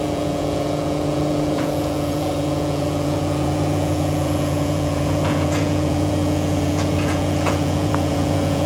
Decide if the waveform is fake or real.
fake